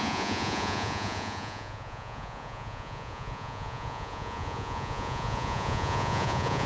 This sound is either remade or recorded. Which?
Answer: remade